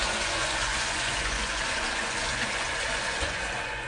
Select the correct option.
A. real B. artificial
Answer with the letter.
B